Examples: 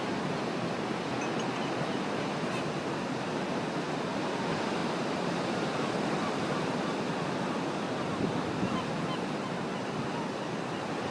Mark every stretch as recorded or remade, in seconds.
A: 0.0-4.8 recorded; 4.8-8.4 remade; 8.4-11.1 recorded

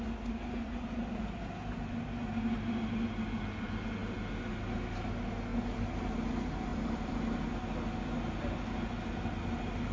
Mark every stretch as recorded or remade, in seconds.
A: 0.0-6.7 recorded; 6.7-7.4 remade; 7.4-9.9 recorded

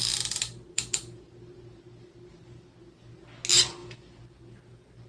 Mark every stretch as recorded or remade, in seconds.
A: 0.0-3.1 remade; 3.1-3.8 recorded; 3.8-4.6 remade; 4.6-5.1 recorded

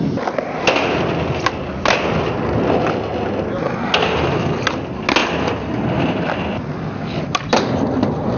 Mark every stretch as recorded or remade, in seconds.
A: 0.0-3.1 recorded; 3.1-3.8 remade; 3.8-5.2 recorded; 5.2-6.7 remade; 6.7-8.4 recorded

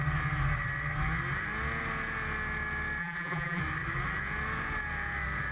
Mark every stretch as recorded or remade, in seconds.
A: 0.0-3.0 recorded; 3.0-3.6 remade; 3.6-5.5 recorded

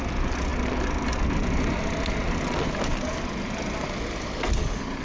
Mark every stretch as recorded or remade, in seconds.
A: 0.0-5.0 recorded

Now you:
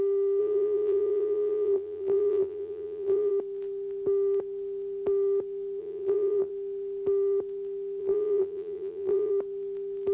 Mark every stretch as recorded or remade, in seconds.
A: 0.0-0.4 recorded; 0.4-3.3 remade; 3.3-5.8 recorded; 5.8-6.5 remade; 6.5-8.0 recorded; 8.0-9.3 remade; 9.3-10.1 recorded